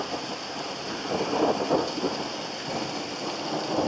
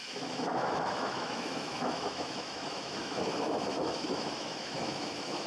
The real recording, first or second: first